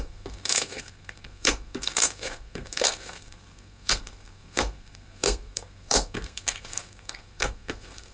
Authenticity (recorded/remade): remade